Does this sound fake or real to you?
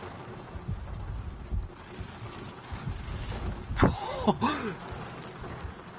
real